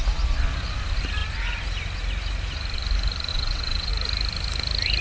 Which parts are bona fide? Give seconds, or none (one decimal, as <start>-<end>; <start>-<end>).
0.0-3.3; 3.9-5.0